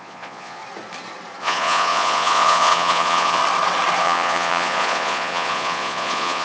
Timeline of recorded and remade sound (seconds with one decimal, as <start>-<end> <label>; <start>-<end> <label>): 0.0-0.6 remade; 0.6-1.4 recorded; 1.4-3.4 remade; 3.4-4.0 recorded; 4.0-6.4 remade